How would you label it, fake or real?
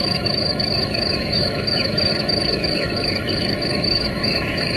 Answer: fake